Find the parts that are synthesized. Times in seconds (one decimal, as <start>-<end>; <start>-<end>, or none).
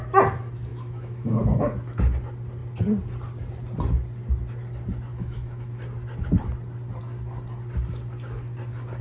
0.7-2.0; 5.1-5.7